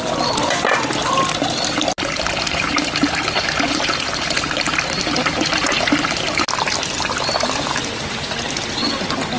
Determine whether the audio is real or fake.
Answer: real